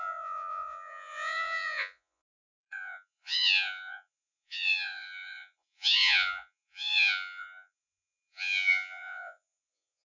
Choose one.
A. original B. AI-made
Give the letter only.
B